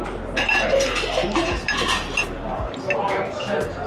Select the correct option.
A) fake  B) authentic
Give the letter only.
B